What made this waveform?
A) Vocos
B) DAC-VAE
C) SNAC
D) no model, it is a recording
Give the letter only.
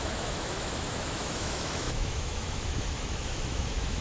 B